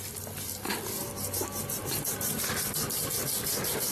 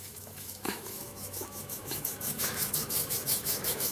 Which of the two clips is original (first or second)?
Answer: first